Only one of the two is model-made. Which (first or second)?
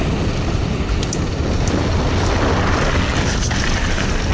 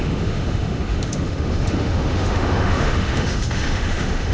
second